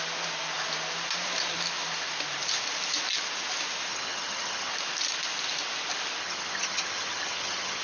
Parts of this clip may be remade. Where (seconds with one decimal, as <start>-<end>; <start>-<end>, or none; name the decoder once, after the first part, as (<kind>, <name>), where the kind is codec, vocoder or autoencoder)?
3.9-4.7 (vocoder, HiFi-GAN); 6.2-7.8